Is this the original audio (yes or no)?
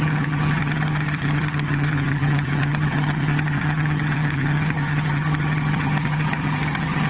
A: no